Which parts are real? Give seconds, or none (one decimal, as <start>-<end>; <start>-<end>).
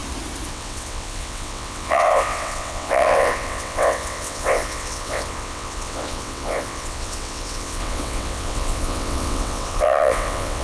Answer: 0.0-0.5